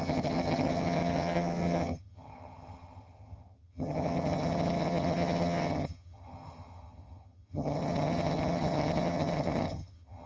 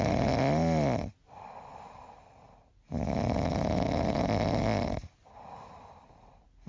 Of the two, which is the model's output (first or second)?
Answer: first